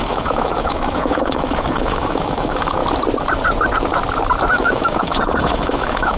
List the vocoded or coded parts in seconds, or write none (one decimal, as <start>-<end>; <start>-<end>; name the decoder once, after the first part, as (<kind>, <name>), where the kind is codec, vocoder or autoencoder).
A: 0.0-2.8 (autoencoder, DAC-VAE); 4.5-6.2